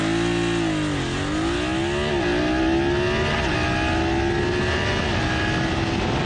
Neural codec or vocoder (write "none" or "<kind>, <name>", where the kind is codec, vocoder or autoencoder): none